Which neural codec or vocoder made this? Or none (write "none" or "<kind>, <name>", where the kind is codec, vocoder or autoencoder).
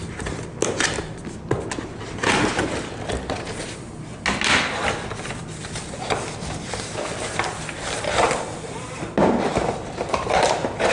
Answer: none